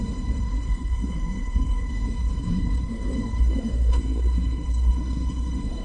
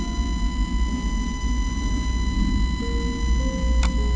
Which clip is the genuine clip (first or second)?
second